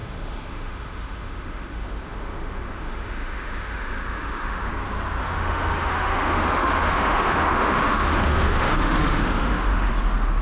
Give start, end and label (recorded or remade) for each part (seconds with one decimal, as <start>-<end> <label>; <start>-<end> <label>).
0.0-4.7 remade; 4.7-5.2 recorded; 5.2-9.9 remade; 9.9-10.4 recorded